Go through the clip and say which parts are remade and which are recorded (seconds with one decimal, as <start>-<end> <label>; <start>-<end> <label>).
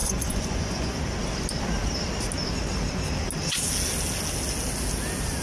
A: 0.0-1.0 remade; 1.0-5.4 recorded